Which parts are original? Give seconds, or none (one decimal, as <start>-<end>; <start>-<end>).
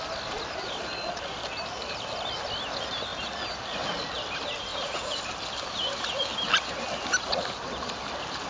0.0-4.7; 5.2-8.5